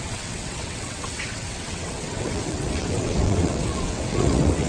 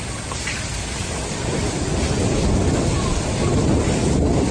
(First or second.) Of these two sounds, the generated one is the first